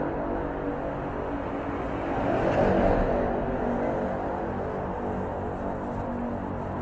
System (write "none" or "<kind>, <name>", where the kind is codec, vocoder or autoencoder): none